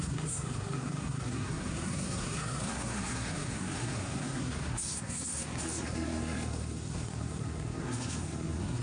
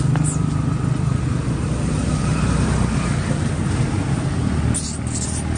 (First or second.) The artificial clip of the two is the first